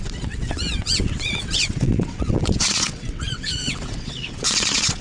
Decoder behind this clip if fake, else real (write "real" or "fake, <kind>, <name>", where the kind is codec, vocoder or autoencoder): fake, vocoder, WaveNeXt